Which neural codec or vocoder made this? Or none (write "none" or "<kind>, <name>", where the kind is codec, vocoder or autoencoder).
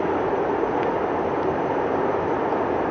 none